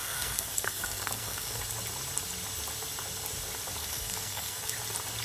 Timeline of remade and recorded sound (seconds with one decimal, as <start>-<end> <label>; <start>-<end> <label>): 0.0-1.6 remade; 1.6-3.8 recorded; 3.8-4.7 remade; 4.7-5.2 recorded